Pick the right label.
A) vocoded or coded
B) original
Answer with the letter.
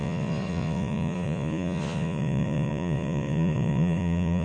A